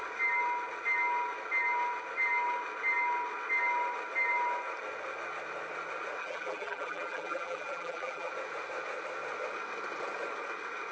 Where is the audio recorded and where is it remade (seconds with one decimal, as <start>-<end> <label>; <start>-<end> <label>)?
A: 0.0-6.2 recorded; 6.2-8.3 remade; 8.3-10.9 recorded